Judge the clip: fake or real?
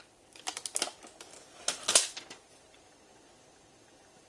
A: real